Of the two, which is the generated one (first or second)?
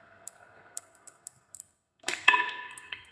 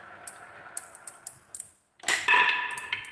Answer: first